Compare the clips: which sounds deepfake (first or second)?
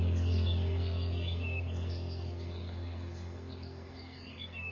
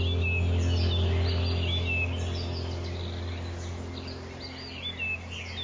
first